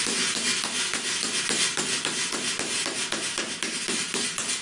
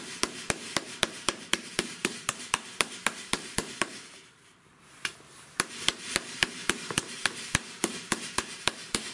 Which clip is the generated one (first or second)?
second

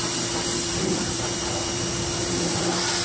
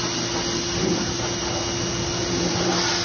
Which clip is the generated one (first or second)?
first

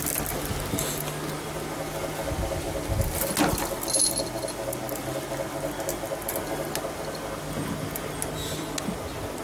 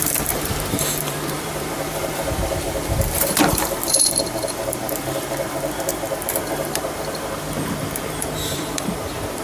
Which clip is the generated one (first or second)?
second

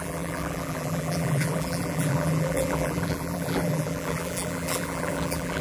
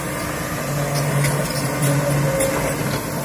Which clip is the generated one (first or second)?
first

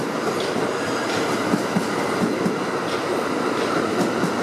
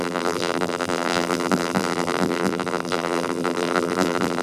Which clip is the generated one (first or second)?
second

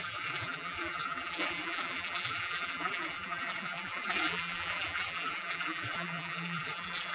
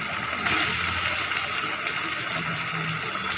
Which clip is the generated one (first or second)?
first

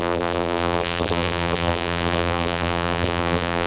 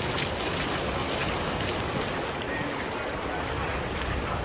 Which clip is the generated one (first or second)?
first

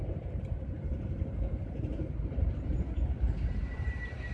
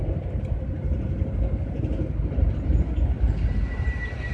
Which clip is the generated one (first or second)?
first